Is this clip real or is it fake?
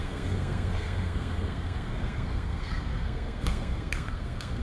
fake